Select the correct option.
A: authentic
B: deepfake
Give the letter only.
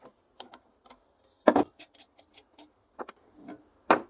A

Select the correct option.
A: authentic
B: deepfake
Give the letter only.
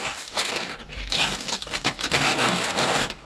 B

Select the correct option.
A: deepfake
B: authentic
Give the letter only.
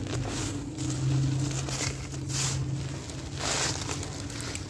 B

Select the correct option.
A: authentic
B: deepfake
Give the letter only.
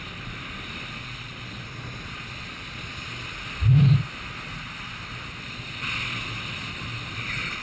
A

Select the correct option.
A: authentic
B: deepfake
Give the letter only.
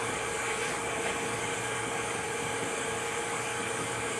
B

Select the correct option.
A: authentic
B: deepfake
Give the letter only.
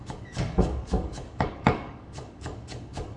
B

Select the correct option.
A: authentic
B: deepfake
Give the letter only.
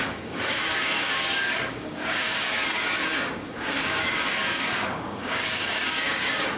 B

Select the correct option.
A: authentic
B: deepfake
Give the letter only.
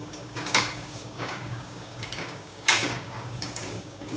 B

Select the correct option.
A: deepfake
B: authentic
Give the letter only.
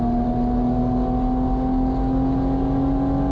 B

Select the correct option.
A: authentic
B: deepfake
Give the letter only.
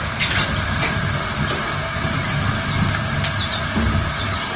A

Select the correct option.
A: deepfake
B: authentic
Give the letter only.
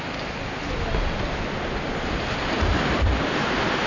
B